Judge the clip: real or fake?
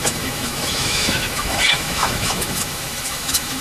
fake